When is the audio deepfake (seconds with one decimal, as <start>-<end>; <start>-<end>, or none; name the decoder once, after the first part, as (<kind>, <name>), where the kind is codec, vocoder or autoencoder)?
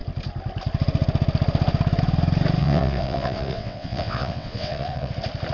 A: 2.6-5.1 (vocoder, WaveNeXt)